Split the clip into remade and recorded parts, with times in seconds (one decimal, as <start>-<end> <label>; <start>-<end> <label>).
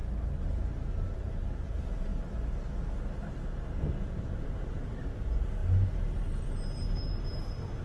0.0-1.3 recorded; 1.3-2.1 remade; 2.1-4.4 recorded; 4.4-7.8 remade